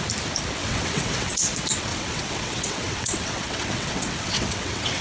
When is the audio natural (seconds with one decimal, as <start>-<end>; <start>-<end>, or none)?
0.0-0.6; 1.4-1.9